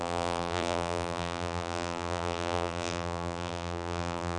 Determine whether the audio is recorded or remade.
remade